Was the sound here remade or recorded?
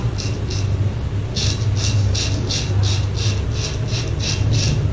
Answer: recorded